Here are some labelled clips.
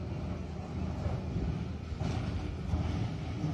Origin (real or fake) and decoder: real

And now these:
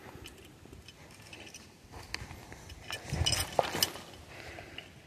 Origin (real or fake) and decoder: real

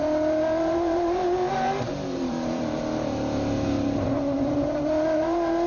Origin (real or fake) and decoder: fake, vocoder, BigVGAN v2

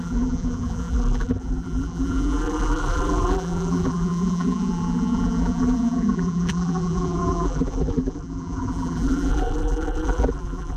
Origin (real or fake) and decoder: fake, vocoder, BigVGAN v2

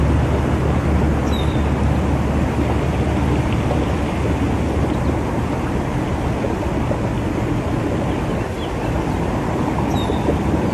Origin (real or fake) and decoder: real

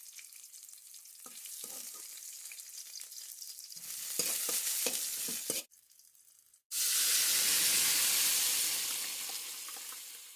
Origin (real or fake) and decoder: real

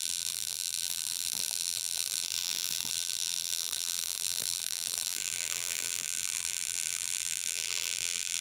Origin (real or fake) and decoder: fake, vocoder, BigVGAN v2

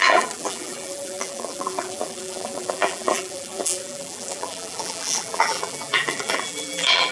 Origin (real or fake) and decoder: fake, vocoder, BigVGAN v2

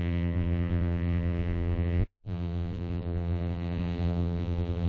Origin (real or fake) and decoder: fake, vocoder, BigVGAN v2